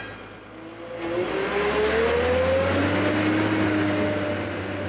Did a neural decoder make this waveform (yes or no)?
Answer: no